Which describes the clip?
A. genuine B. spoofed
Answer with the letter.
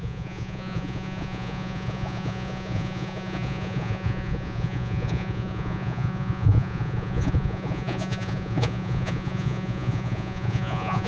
B